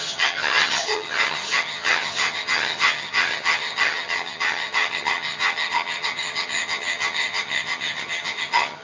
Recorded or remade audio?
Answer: remade